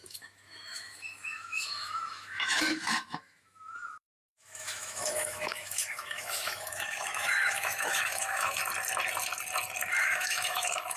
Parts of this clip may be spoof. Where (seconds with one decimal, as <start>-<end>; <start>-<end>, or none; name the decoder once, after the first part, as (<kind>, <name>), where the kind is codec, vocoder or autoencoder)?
0.0-8.6 (autoencoder, DAC-VAE); 10.0-11.0